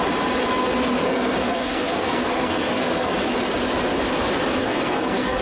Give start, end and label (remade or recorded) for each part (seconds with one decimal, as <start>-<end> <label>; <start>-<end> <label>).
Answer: 0.0-1.0 recorded; 1.0-3.1 remade; 3.1-4.6 recorded; 4.6-5.4 remade